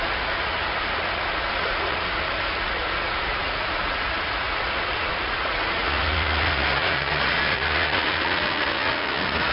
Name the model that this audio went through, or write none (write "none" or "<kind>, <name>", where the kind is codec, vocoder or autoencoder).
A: vocoder, Vocos